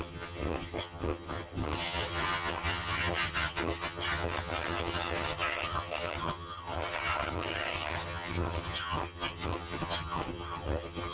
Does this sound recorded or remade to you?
remade